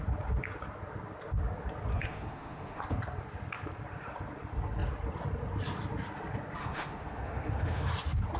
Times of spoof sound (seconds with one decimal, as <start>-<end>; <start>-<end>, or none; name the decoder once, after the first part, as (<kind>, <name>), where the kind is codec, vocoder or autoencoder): 1.9-2.8 (autoencoder, DAC-VAE); 6.6-7.9